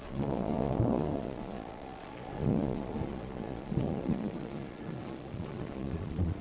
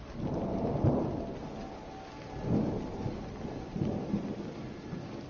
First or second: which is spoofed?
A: first